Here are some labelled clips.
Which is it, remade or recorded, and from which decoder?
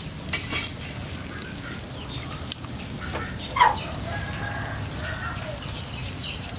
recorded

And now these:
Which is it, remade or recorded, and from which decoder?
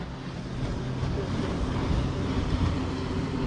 recorded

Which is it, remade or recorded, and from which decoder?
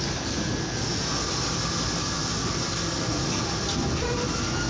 recorded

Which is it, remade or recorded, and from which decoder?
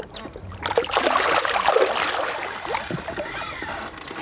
recorded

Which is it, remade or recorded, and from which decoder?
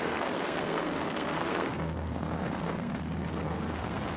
remade, codec, SNAC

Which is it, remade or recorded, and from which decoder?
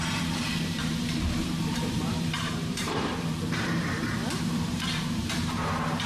remade, vocoder, BigVGAN v2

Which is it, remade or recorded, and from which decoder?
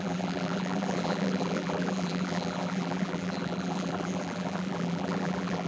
remade, vocoder, BigVGAN v2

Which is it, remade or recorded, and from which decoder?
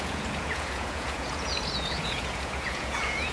remade, vocoder, Vocos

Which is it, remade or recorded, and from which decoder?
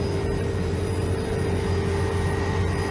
recorded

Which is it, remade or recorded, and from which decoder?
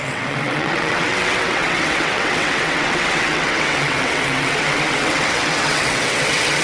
remade, vocoder, WaveNeXt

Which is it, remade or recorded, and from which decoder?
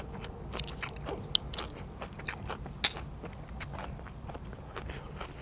recorded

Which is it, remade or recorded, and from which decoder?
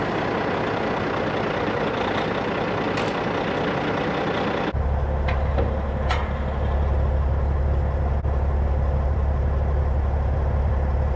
recorded